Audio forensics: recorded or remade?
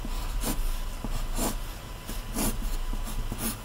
recorded